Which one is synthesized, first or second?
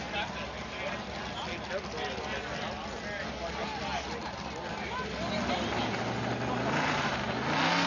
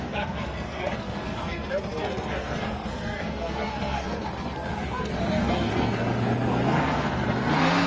second